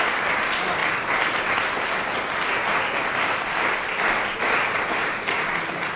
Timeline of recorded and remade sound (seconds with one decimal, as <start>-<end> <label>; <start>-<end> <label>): 0.0-6.0 recorded